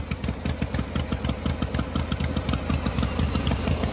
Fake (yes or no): no